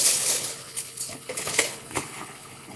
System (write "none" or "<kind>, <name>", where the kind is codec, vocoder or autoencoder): codec, HILCodec